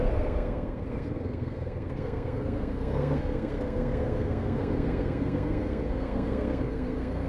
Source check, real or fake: fake